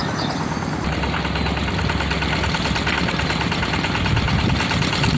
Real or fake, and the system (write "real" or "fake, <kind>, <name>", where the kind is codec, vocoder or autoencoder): real